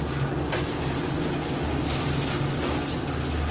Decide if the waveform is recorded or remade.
recorded